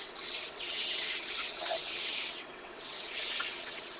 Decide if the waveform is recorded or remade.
remade